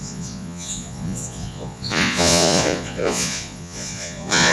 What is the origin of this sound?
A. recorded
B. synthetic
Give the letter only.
B